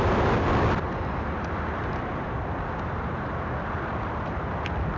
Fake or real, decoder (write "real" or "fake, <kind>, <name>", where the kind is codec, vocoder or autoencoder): fake, vocoder, BigVGAN v2